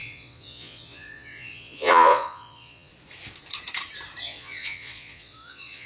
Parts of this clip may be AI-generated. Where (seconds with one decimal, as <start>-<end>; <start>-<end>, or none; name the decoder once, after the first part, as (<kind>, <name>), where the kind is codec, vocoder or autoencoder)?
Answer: 0.0-2.9 (vocoder, Vocos); 4.2-5.9